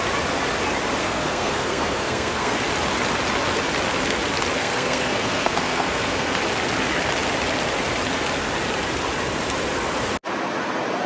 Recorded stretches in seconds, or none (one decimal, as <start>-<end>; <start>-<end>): 0.0-1.0; 2.6-4.6; 6.4-11.1